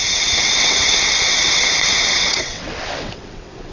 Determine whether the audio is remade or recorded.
remade